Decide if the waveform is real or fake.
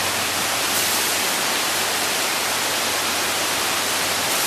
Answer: fake